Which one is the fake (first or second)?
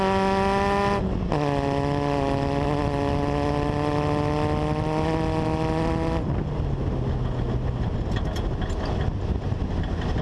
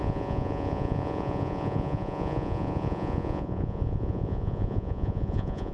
second